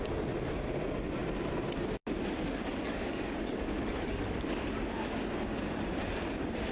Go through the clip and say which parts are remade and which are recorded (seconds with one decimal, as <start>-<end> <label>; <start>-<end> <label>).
0.0-2.7 recorded; 2.7-4.6 remade; 4.6-6.7 recorded